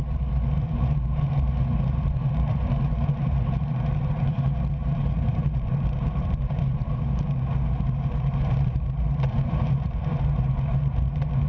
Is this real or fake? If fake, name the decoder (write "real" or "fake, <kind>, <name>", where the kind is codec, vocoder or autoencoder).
fake, vocoder, BigVGAN v2